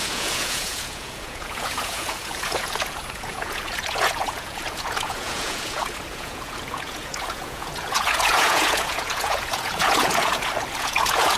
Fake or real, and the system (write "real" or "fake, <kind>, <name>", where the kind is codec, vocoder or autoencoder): fake, vocoder, Vocos